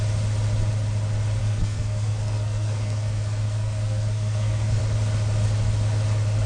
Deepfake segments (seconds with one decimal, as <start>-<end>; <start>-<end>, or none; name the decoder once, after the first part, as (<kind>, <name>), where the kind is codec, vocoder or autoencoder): 1.4-4.8 (codec, SNAC)